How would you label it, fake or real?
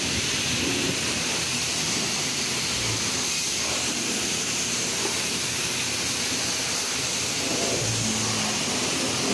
real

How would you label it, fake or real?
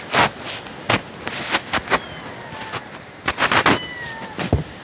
real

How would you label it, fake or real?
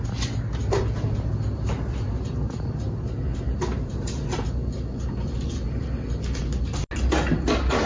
real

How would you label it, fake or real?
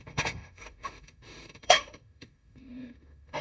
fake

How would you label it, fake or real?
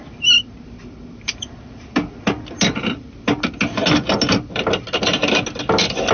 real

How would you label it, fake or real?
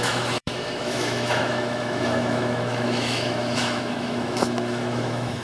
fake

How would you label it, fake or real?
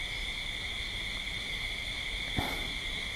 real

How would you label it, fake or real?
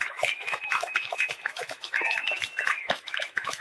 fake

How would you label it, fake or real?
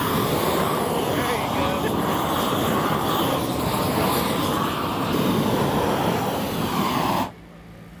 real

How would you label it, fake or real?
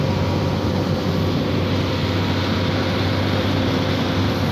real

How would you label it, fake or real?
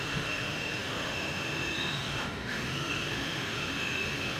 fake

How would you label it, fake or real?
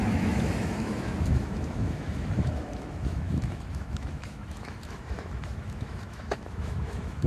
fake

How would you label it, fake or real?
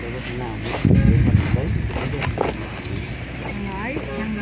real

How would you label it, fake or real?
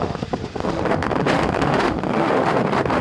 fake